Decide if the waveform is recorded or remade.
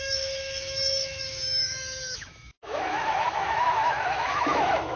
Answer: remade